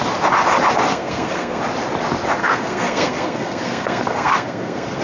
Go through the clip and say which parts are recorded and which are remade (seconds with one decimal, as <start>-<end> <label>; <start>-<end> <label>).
0.0-0.9 recorded; 0.9-1.6 remade; 1.6-2.4 recorded; 2.4-5.0 remade